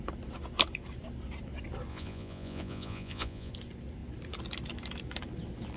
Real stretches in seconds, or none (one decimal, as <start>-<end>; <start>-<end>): 0.0-1.9; 3.5-5.8